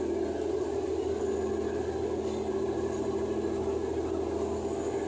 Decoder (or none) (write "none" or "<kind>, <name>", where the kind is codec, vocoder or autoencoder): none